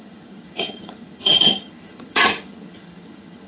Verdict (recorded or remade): remade